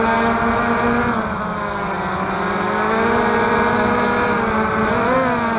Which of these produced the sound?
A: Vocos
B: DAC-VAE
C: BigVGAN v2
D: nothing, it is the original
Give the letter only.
D